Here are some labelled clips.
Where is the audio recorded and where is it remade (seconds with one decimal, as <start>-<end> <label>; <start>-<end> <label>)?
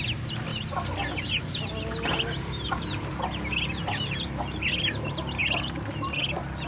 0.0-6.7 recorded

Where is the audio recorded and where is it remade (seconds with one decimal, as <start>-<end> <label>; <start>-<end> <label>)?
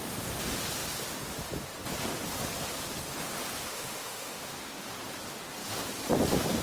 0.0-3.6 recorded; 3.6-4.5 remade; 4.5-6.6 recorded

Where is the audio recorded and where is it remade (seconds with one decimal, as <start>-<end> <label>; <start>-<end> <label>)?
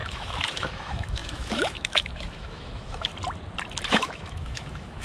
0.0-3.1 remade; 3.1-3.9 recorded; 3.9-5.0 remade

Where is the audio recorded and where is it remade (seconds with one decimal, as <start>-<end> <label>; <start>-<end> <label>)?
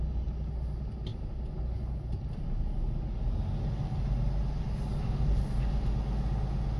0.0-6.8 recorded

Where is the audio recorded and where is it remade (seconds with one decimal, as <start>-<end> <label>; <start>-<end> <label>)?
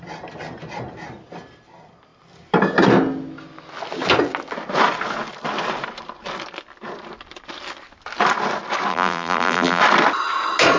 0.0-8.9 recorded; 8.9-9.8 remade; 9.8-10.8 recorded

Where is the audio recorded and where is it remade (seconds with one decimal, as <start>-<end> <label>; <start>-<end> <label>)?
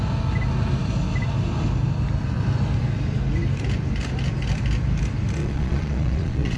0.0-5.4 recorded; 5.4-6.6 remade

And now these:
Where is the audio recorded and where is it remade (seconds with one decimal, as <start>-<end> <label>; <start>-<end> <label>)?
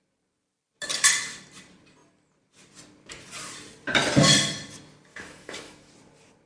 0.0-5.1 recorded; 5.1-5.9 remade; 5.9-6.5 recorded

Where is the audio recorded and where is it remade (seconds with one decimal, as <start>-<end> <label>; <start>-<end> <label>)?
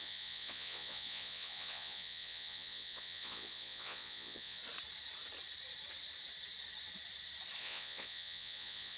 0.0-4.6 remade; 4.6-7.6 recorded; 7.6-9.0 remade